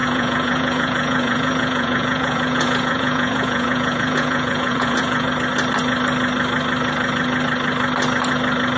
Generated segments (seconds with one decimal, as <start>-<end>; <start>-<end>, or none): 0.0-5.3